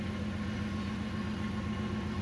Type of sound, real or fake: real